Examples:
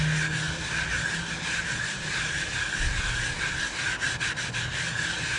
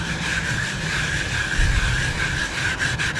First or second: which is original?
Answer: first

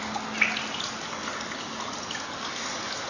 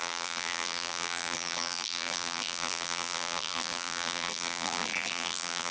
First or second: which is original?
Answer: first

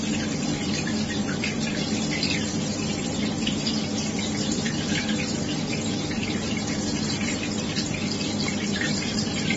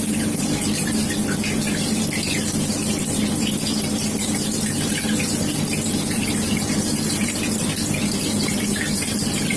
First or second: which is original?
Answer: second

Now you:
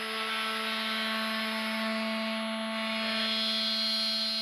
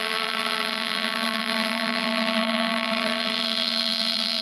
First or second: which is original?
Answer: first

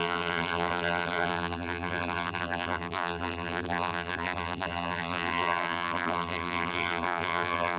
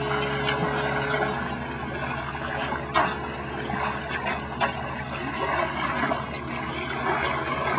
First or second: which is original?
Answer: second